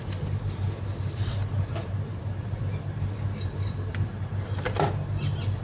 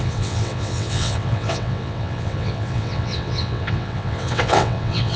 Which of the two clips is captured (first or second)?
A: first